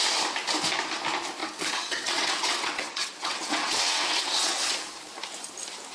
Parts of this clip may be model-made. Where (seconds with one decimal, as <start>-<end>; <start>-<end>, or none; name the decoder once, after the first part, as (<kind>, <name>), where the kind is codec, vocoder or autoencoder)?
1.4-4.6 (vocoder, WaveNeXt)